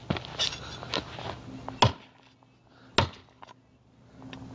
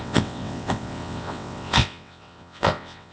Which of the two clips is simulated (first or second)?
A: second